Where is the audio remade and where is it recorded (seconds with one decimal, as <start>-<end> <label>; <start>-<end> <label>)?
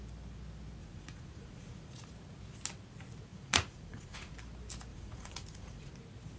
0.0-0.8 recorded; 0.8-2.1 remade; 2.1-3.3 recorded; 3.3-4.3 remade; 4.3-4.9 recorded; 4.9-5.9 remade; 5.9-6.4 recorded